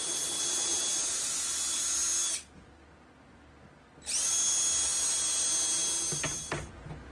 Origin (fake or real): real